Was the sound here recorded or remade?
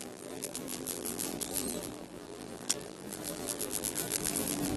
remade